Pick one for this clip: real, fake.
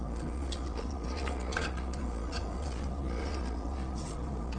fake